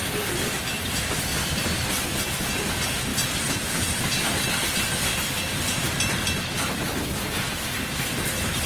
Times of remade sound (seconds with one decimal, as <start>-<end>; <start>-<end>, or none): 0.0-2.2; 3.1-6.2